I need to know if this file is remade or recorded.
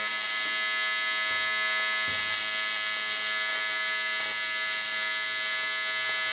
recorded